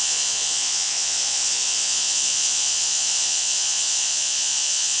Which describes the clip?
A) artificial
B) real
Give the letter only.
A